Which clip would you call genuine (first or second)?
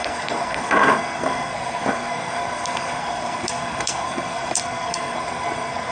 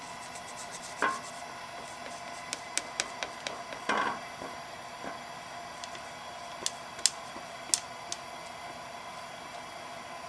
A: second